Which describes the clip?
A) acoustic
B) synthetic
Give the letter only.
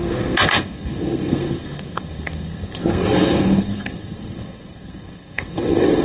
B